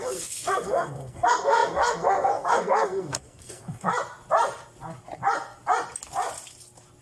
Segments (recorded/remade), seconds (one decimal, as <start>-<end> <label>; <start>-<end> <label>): 0.0-3.9 remade; 3.9-7.0 recorded